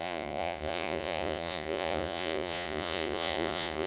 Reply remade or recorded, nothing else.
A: remade